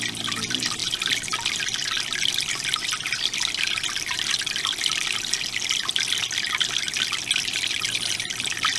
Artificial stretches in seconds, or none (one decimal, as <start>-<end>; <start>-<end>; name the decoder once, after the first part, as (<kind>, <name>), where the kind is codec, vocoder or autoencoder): none